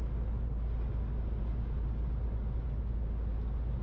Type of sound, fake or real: real